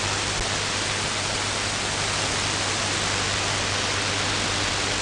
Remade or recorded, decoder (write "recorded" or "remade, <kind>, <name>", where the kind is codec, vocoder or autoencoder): recorded